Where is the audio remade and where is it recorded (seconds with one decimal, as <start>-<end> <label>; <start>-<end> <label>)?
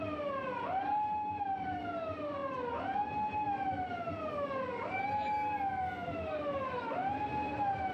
0.0-7.9 recorded